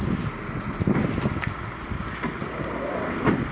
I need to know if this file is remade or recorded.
recorded